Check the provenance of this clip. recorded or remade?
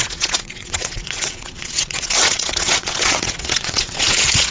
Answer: remade